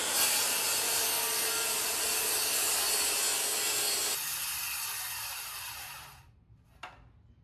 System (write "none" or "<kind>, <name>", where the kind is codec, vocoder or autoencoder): none